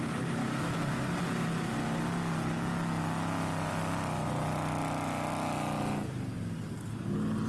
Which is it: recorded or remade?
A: recorded